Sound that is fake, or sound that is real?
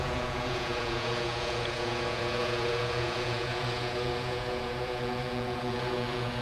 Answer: fake